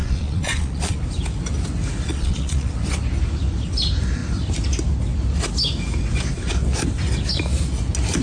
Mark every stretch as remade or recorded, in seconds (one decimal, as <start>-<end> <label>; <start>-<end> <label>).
0.0-1.0 remade; 1.0-2.1 recorded; 2.1-2.7 remade; 2.7-8.2 recorded